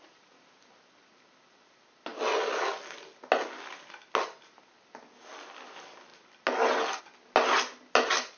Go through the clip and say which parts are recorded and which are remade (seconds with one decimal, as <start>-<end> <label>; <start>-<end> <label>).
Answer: 0.0-8.4 recorded